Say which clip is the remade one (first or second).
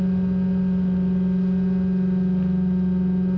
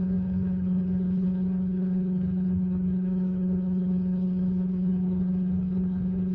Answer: second